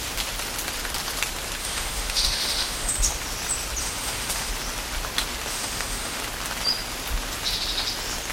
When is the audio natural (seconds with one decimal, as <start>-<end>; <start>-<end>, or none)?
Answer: 0.0-1.6; 2.9-3.8; 4.5-5.5; 6.2-8.3